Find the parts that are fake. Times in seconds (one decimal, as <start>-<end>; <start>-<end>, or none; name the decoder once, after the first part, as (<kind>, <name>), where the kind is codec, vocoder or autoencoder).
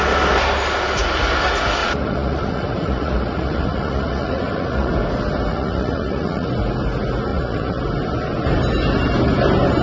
1.8-4.9 (vocoder, Vocos); 5.5-6.5; 7.3-7.8